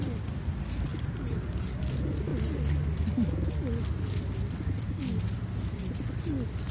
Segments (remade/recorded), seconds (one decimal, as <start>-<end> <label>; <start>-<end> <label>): 0.0-0.9 recorded; 0.9-1.8 remade; 1.8-6.7 recorded